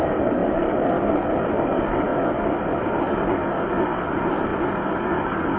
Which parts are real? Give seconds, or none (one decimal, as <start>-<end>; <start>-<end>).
2.1-4.1; 4.5-5.6

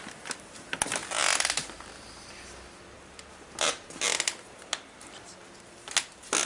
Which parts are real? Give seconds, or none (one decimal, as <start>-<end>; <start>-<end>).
0.0-6.5

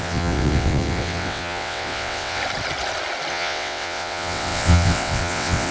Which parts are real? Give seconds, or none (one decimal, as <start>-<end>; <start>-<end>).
2.4-3.3

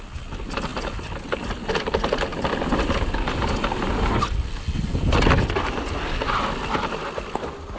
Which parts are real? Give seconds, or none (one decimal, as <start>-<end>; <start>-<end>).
0.0-7.8

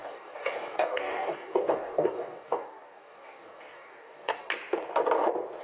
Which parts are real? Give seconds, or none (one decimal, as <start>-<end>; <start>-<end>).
4.4-5.6

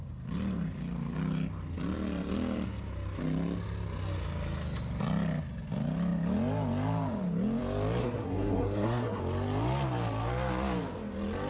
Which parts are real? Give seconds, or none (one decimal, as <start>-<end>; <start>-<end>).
0.0-8.0; 9.2-11.5